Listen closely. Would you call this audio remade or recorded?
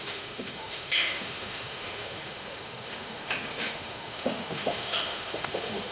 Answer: remade